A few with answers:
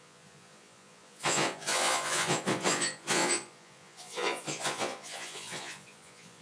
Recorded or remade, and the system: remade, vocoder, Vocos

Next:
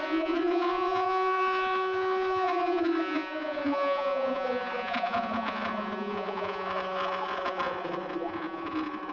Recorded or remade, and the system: remade, vocoder, Vocos